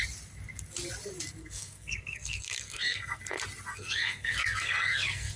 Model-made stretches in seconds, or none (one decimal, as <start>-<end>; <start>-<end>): 1.4-3.2; 3.7-5.4